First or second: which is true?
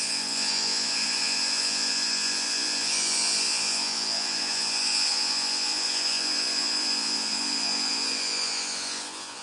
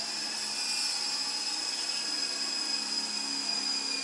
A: second